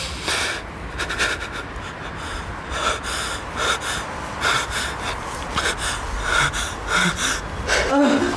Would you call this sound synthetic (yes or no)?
no